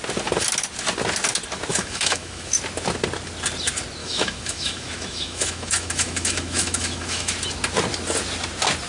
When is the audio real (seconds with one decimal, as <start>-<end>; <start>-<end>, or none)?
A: 0.0-1.7; 2.5-4.0; 7.3-8.9